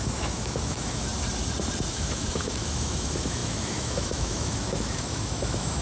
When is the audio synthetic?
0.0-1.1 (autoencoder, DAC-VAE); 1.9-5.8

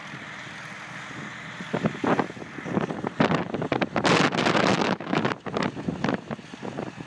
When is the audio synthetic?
4.7-5.2 (autoencoder, DAC-VAE)